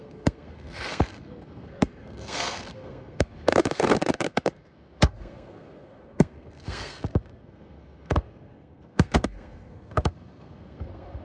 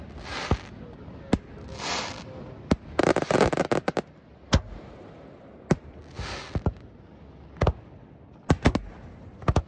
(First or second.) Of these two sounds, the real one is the second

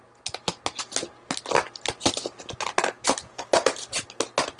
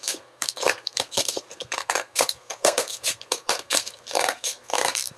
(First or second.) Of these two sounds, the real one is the first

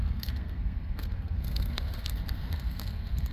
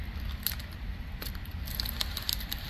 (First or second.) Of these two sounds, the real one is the second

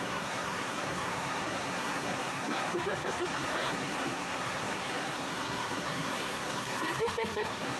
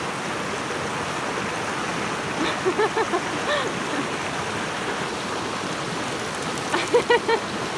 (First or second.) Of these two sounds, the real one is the second